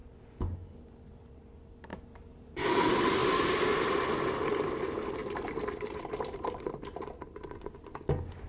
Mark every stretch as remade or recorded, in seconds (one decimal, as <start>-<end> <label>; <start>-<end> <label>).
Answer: 0.0-1.9 recorded; 1.9-2.7 remade; 2.7-3.2 recorded; 3.2-3.8 remade; 3.8-5.2 recorded; 5.2-7.3 remade; 7.3-8.5 recorded